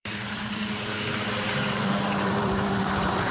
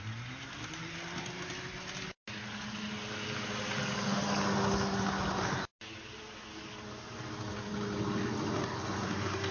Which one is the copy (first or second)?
first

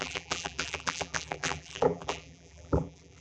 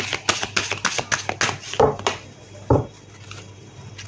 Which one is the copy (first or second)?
first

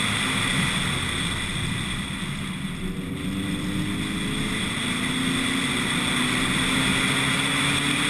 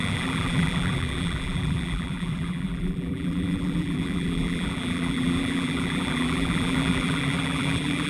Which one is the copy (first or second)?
second